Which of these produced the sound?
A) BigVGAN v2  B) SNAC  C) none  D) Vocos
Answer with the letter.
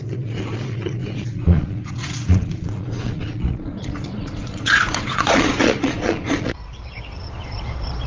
D